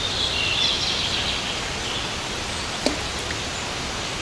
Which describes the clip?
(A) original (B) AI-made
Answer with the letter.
A